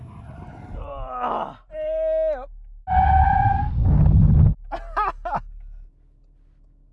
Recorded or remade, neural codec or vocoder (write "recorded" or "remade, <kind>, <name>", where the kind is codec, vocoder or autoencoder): recorded